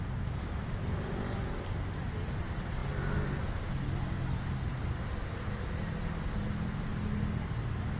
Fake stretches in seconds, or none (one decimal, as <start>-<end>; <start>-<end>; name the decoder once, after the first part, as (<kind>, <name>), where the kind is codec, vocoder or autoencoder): none

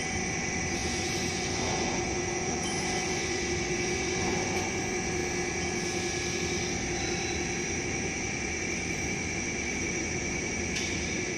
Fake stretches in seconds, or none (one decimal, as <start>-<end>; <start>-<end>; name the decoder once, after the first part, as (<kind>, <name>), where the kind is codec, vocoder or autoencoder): 0.0-5.2 (vocoder, Vocos); 7.8-11.4

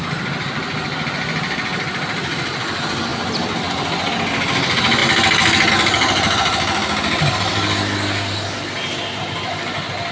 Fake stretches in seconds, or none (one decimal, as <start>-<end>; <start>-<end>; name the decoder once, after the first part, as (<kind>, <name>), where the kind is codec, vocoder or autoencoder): none

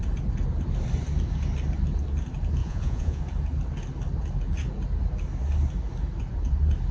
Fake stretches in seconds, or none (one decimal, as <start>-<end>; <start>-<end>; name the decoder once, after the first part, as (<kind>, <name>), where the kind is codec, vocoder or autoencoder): 2.6-3.2 (vocoder, Vocos)